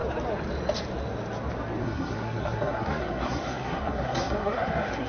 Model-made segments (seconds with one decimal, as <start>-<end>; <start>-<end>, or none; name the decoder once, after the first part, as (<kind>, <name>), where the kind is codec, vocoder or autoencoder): 1.8-5.1 (codec, SNAC)